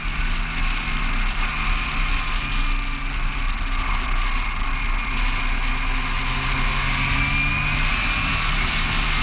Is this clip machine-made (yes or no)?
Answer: no